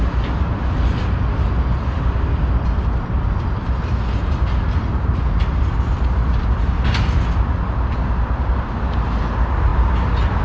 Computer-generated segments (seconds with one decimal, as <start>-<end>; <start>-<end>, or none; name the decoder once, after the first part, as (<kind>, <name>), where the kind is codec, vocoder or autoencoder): none